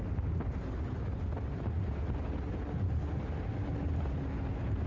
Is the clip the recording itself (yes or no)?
yes